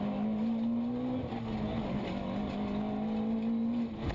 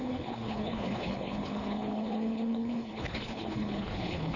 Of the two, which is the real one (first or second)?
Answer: first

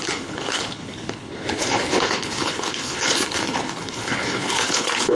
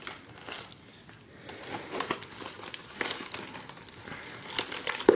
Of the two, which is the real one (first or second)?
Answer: second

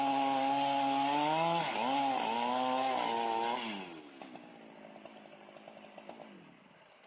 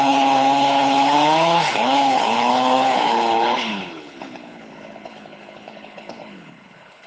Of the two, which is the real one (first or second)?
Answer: first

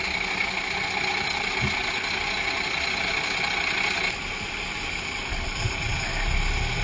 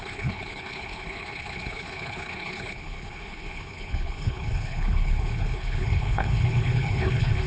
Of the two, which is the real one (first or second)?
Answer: first